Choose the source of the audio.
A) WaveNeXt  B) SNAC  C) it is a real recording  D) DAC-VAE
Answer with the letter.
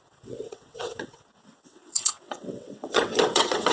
A